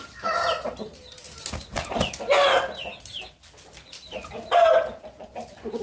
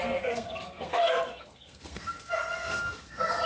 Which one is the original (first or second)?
first